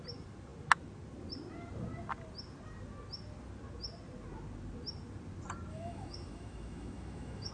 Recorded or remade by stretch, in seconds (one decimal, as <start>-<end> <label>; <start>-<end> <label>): 0.0-5.7 recorded; 5.7-7.5 remade

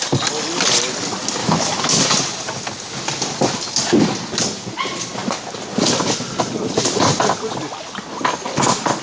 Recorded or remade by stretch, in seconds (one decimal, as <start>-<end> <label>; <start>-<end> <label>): 0.0-1.4 recorded; 1.4-2.0 remade; 2.0-9.0 recorded

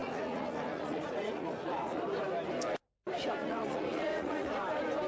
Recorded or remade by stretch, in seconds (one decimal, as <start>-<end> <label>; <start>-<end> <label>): 0.0-2.0 remade; 2.0-3.4 recorded; 3.4-4.6 remade; 4.6-5.1 recorded

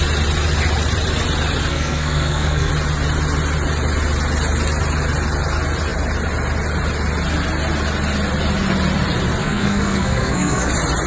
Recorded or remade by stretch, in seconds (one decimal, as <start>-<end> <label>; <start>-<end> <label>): 0.0-1.7 recorded; 1.7-2.7 remade; 2.7-9.4 recorded; 9.4-10.7 remade; 10.7-11.1 recorded